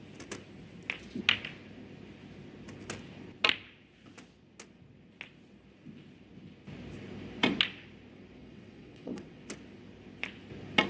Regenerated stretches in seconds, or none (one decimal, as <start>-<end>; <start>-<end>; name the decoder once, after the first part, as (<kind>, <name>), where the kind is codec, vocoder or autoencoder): 8.4-9.4 (vocoder, WaveNeXt)